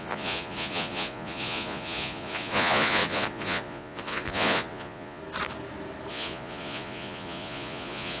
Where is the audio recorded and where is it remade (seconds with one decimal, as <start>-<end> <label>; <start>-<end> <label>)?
0.0-5.2 remade; 5.2-6.1 recorded; 6.1-8.2 remade